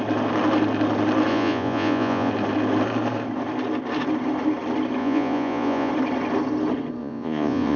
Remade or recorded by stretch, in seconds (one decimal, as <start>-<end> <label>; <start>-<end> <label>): 0.0-1.3 recorded; 1.3-2.3 remade; 2.3-5.0 recorded; 5.0-5.9 remade; 5.9-7.0 recorded; 7.0-7.8 remade

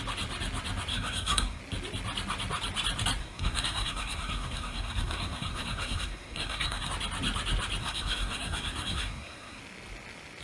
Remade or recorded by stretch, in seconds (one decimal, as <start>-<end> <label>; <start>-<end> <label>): 0.0-0.9 recorded; 0.9-1.6 remade; 1.6-3.2 recorded; 3.2-6.9 remade; 6.9-7.8 recorded; 7.8-9.6 remade; 9.6-10.4 recorded

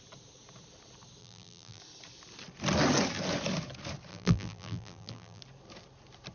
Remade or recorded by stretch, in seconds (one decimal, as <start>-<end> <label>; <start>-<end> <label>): 0.0-1.2 recorded; 1.2-1.8 remade; 1.8-4.1 recorded; 4.1-5.4 remade; 5.4-6.3 recorded

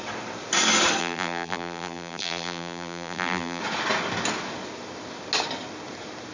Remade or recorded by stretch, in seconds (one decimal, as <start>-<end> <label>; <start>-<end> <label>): 0.0-1.0 recorded; 1.0-3.6 remade; 3.6-6.3 recorded

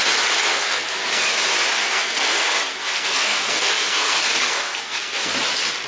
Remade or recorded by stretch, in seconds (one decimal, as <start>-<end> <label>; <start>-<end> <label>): 0.0-0.5 recorded; 0.5-1.3 remade; 1.3-1.8 recorded; 1.8-5.3 remade; 5.3-5.9 recorded

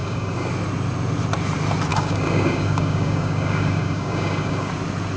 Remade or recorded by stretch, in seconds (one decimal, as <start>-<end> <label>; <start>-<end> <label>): 0.0-0.5 remade; 0.5-1.9 recorded; 1.9-4.7 remade; 4.7-5.2 recorded

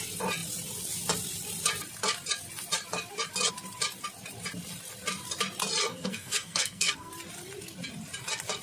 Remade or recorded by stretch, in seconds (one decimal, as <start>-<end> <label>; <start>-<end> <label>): 0.0-5.9 recorded; 5.9-7.1 remade; 7.1-8.6 recorded

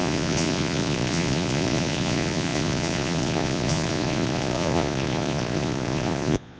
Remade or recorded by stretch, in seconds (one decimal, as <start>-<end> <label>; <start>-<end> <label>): 0.0-6.6 remade